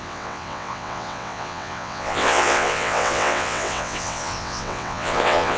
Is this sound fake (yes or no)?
yes